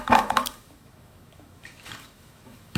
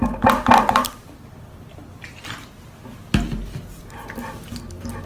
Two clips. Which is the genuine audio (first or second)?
second